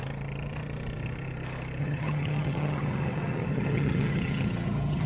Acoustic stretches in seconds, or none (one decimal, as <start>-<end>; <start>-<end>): 0.0-1.8